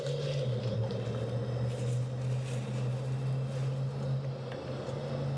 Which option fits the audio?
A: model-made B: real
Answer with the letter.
B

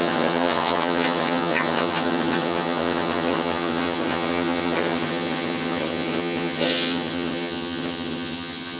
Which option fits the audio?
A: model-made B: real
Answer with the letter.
A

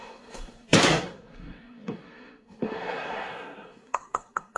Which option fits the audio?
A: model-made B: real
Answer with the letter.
A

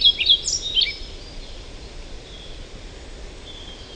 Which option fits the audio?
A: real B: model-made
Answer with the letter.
A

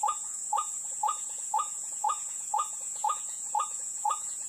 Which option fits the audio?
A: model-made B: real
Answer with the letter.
A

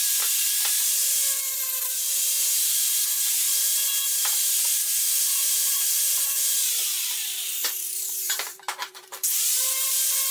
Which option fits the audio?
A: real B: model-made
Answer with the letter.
B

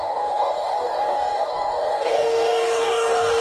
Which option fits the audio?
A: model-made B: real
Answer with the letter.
A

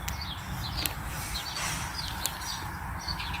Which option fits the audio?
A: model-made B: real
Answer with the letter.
B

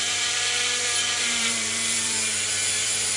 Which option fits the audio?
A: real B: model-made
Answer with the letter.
B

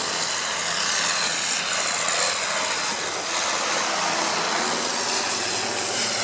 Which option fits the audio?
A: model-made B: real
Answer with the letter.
B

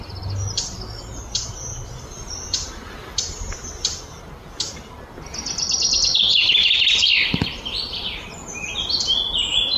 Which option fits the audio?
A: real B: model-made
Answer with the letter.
A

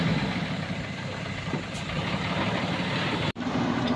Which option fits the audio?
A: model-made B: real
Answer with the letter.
A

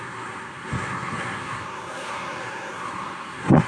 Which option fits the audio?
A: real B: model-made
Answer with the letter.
B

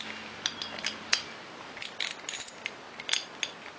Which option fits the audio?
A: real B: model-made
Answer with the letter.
A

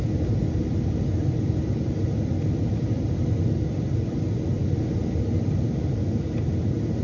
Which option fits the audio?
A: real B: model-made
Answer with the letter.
A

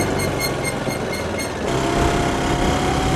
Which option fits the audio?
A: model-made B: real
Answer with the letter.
B